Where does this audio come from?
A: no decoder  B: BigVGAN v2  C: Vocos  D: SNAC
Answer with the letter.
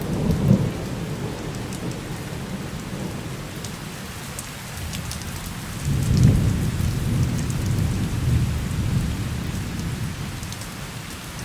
A